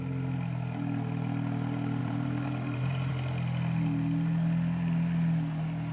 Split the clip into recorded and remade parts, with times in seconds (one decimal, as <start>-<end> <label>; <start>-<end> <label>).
0.0-2.0 recorded; 2.0-3.1 remade; 3.1-5.9 recorded